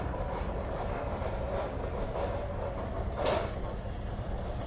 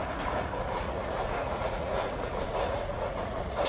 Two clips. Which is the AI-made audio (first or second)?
second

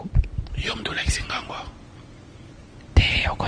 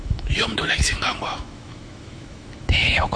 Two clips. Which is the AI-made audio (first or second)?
second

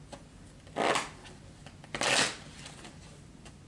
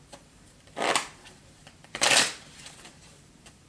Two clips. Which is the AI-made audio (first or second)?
second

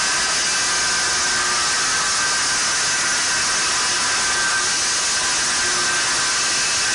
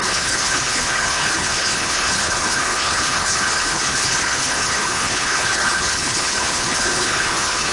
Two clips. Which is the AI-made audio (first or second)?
second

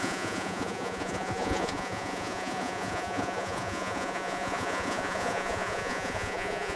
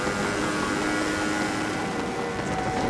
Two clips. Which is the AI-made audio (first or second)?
first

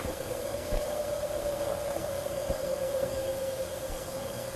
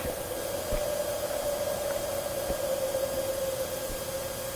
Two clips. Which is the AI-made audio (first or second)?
first